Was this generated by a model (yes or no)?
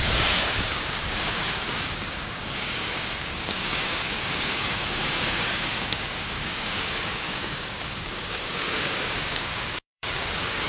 yes